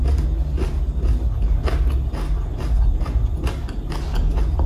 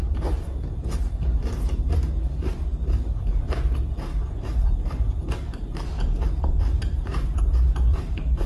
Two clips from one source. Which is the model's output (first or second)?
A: second